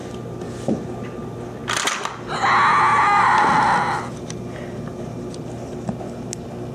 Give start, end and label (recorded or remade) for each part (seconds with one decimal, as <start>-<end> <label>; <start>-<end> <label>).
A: 0.0-6.7 recorded

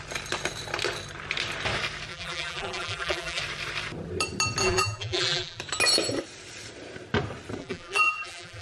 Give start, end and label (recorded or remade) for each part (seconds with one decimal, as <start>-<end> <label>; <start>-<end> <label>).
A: 0.0-2.1 recorded; 2.1-3.4 remade; 3.4-4.6 recorded; 4.6-5.6 remade; 5.6-7.6 recorded; 7.6-8.6 remade

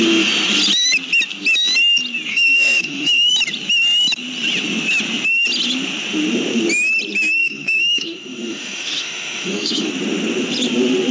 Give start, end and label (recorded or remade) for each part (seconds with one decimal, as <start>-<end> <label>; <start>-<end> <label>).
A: 0.0-2.3 recorded; 2.3-3.3 remade; 3.3-7.4 recorded; 7.4-9.9 remade; 9.9-11.1 recorded